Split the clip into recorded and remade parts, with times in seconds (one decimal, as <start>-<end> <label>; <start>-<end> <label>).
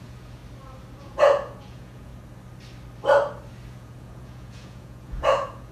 0.0-0.4 remade; 0.4-1.0 recorded; 1.0-2.1 remade; 2.1-3.7 recorded; 3.7-5.7 remade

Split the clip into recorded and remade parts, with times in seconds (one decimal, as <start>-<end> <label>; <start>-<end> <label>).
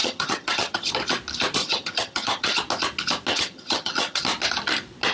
0.0-0.9 remade; 0.9-1.6 recorded; 1.6-2.6 remade; 2.6-3.3 recorded; 3.3-4.2 remade; 4.2-5.1 recorded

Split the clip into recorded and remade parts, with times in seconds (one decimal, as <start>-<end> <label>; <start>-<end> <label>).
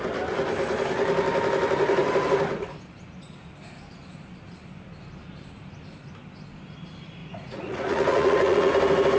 0.0-7.2 recorded; 7.2-8.7 remade; 8.7-9.2 recorded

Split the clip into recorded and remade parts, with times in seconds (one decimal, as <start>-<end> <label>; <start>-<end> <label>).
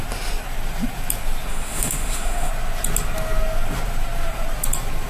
0.0-1.5 recorded; 1.5-2.5 remade; 2.5-5.1 recorded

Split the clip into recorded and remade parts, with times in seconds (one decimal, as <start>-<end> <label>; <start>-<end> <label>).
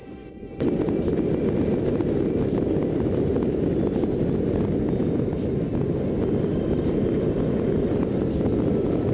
0.0-9.1 recorded